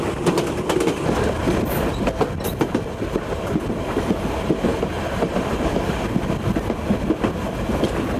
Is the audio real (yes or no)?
yes